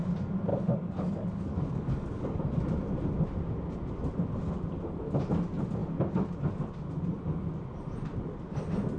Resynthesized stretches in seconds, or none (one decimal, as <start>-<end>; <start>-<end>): 0.5-2.4